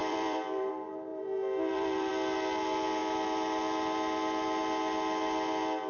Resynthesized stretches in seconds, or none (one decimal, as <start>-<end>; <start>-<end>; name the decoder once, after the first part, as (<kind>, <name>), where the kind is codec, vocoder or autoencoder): 0.0-0.7 (vocoder, BigVGAN v2); 1.1-2.1